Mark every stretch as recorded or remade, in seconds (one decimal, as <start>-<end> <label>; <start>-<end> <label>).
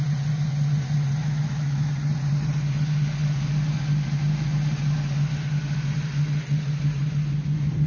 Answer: 0.0-1.2 recorded; 1.2-1.9 remade; 1.9-7.9 recorded